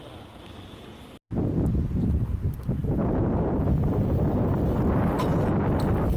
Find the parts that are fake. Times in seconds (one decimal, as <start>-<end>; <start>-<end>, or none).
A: 2.8-4.8